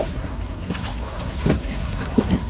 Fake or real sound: fake